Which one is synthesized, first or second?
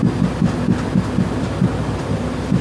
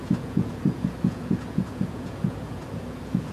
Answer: second